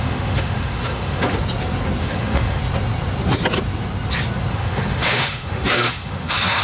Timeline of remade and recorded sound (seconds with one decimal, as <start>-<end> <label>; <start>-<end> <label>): 0.0-1.4 remade; 1.4-2.0 recorded; 2.0-2.6 remade; 2.6-4.5 recorded; 4.5-6.6 remade